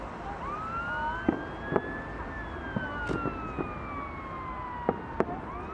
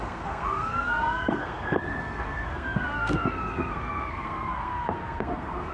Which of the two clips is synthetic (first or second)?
second